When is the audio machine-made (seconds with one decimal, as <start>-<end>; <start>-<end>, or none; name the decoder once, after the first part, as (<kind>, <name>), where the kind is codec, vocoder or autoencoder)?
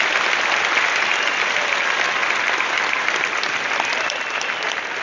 none